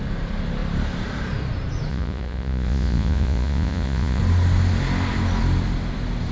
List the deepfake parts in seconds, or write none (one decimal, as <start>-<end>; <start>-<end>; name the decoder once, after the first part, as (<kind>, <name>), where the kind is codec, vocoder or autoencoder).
1.9-4.2 (vocoder, Vocos)